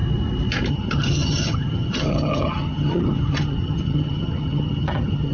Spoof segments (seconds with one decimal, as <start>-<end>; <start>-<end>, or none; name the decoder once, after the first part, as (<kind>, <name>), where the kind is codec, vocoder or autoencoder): 0.7-5.3 (vocoder, HiFi-GAN)